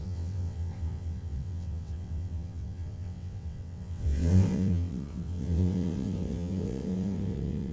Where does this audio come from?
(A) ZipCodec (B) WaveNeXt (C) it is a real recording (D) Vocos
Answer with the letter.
B